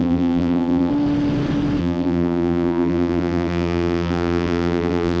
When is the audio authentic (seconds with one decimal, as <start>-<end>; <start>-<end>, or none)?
0.9-1.8